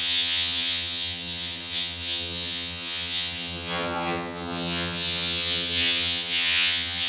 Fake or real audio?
fake